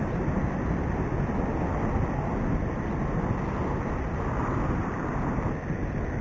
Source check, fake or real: real